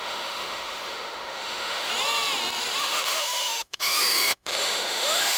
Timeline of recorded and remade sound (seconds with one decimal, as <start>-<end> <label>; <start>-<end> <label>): 0.0-1.9 remade; 1.9-2.8 recorded; 2.8-5.4 remade